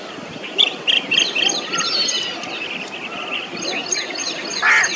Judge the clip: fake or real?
real